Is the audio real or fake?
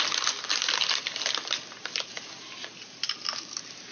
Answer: real